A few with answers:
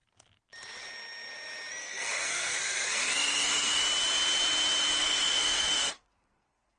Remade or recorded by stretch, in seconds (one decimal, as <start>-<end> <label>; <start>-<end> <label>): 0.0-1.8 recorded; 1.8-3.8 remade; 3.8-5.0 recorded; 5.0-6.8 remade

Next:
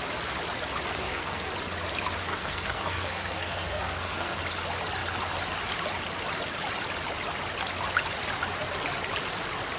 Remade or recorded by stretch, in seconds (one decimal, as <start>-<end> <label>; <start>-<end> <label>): 0.0-0.9 recorded; 0.9-1.5 remade; 1.5-2.3 recorded; 2.3-4.4 remade; 4.4-9.8 recorded

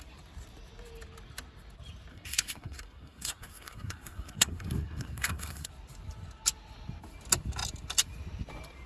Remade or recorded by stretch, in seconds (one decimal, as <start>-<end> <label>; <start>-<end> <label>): 0.0-2.1 recorded; 2.1-5.7 remade; 5.7-8.9 recorded

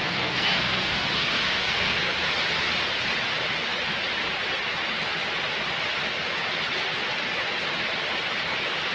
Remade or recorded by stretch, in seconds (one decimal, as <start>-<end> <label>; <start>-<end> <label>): 0.0-2.1 remade; 2.1-8.9 recorded